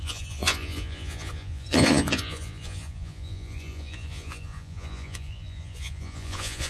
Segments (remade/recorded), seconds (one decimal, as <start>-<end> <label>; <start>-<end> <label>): 0.0-6.7 remade